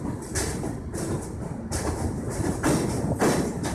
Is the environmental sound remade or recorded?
recorded